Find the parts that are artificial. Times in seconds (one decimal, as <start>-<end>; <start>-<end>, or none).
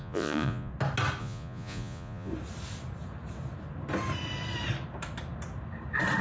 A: 0.0-0.7; 1.2-2.3